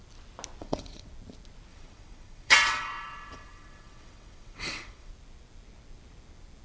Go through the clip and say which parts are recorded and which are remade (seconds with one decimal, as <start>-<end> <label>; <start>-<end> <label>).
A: 0.0-0.6 recorded; 0.6-1.1 remade; 1.1-1.7 recorded; 1.7-5.1 remade; 5.1-6.6 recorded